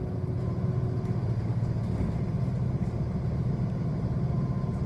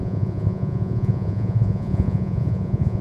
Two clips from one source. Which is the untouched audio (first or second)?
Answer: first